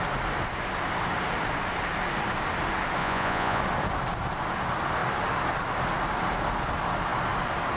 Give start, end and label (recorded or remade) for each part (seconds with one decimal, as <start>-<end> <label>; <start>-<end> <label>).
0.0-3.0 recorded; 3.0-3.6 remade; 3.6-7.8 recorded